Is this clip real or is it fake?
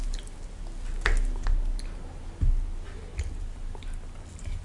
real